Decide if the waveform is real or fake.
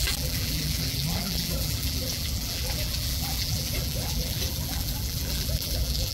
fake